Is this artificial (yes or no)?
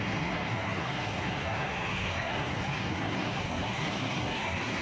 yes